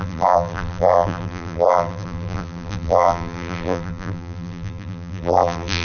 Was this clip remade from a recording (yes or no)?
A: yes